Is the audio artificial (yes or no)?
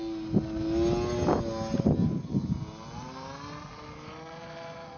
no